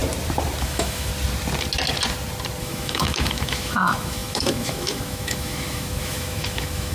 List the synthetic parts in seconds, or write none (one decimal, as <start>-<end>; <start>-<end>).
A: 0.6-1.1; 2.6-6.9

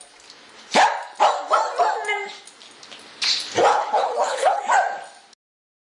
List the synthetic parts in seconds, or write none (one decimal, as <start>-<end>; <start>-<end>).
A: 3.7-4.6

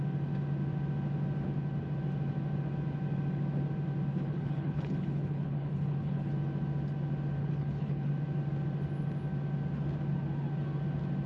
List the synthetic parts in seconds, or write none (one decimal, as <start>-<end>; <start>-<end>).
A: 4.1-6.3; 7.4-8.1

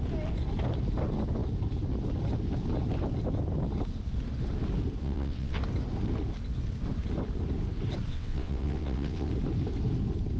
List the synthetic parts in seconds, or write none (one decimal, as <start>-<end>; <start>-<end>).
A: 5.0-5.6; 8.1-9.3

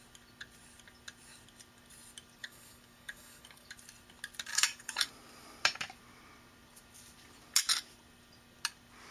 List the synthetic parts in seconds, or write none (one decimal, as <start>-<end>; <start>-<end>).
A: 2.4-3.7; 4.5-5.1